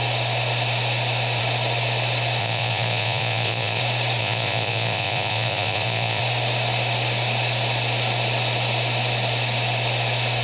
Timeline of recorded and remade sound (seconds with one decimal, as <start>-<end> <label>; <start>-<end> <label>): 0.0-2.4 recorded; 2.4-3.8 remade; 3.8-4.2 recorded; 4.2-6.2 remade; 6.2-10.4 recorded